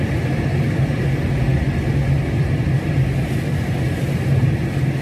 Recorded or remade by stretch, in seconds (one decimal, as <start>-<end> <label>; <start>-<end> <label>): 0.0-5.0 recorded

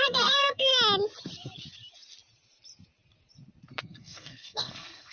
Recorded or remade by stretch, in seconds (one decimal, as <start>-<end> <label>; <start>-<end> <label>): 0.0-0.7 remade; 0.7-3.8 recorded; 3.8-5.1 remade

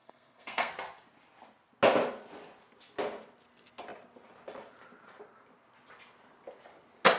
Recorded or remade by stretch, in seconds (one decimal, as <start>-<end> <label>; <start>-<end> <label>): 0.0-0.7 remade; 0.7-7.2 recorded

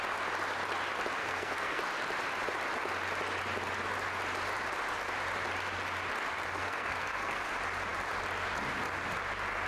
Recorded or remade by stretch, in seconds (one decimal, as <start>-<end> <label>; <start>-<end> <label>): 0.0-1.2 recorded; 1.2-1.8 remade; 1.8-6.6 recorded; 6.6-7.5 remade; 7.5-9.7 recorded

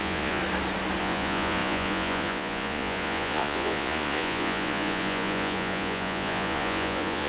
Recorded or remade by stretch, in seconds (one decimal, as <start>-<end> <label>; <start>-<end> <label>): 0.0-0.4 remade; 0.4-1.0 recorded; 1.0-7.3 remade

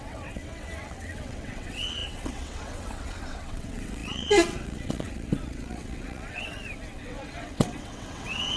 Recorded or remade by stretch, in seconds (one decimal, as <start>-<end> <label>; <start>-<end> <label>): 0.0-8.6 remade

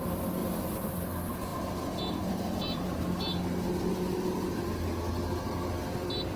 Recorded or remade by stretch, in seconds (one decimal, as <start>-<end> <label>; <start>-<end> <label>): 0.0-0.4 recorded; 0.4-0.9 remade; 0.9-1.5 recorded; 1.5-3.0 remade; 3.0-6.4 recorded